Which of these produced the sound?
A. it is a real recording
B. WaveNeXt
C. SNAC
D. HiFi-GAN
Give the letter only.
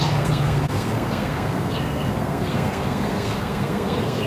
C